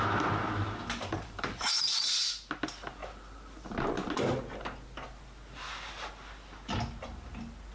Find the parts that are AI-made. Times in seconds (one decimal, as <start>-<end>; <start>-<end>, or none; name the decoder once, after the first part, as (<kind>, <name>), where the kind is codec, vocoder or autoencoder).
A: 1.0-1.7 (vocoder, BigVGAN v2)